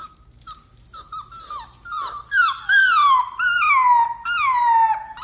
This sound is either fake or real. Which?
real